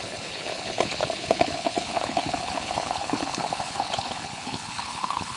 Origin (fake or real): fake